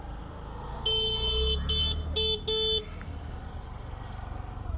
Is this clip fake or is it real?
real